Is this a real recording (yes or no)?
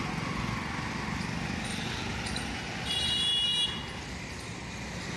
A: yes